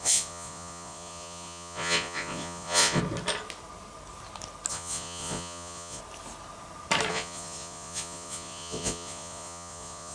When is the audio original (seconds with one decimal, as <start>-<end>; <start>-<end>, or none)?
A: 3.0-4.7; 6.0-7.1

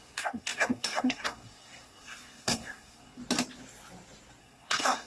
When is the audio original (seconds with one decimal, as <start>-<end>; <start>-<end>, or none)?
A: 3.2-4.4

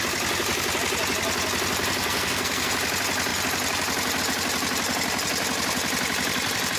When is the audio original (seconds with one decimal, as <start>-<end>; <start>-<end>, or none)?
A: 0.0-2.0; 2.7-6.8

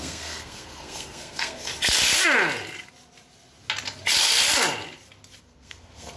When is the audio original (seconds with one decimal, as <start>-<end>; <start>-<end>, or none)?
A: 1.7-5.4

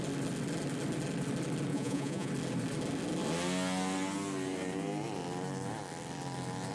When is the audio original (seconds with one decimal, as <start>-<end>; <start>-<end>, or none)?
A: 0.0-1.7; 2.3-6.7